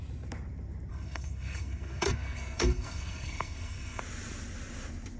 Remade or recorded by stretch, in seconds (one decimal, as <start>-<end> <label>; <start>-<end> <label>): 0.0-0.9 recorded; 0.9-4.0 remade; 4.0-5.2 recorded

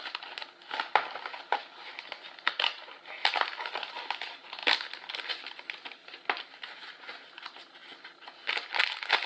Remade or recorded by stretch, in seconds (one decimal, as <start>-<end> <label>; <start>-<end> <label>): 0.0-9.3 recorded